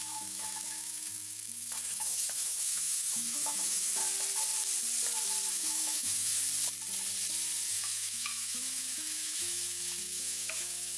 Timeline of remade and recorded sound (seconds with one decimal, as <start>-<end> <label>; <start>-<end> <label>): 0.0-4.0 remade; 4.0-5.5 recorded; 5.5-6.4 remade; 6.4-7.7 recorded; 7.7-11.0 remade